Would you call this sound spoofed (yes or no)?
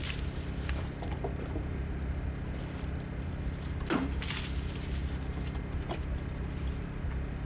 no